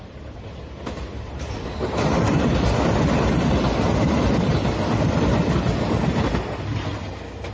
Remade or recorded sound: recorded